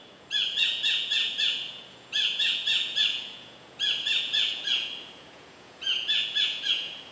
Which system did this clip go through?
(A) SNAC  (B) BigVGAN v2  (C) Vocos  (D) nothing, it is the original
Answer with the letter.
C